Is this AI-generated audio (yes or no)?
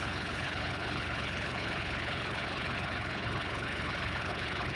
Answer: yes